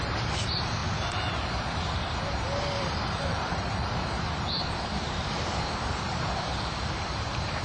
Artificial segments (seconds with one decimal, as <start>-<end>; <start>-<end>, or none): 0.0-7.6